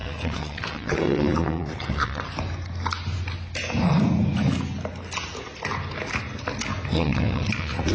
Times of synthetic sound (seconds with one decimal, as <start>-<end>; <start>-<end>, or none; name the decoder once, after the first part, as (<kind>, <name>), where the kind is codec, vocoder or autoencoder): 0.0-2.2 (vocoder, WaveNeXt); 6.9-7.9